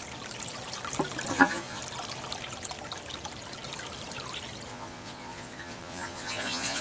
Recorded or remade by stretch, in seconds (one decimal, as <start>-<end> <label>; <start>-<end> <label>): 0.0-1.3 recorded; 1.3-1.8 remade; 1.8-4.7 recorded; 4.7-6.8 remade